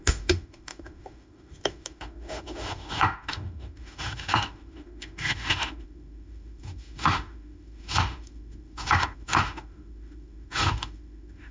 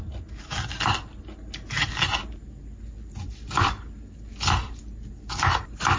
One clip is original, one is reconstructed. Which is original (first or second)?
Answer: second